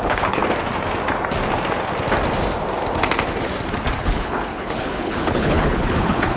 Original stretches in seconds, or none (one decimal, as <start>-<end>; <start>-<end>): 0.4-4.0